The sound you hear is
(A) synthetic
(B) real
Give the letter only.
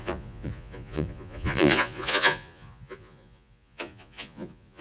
A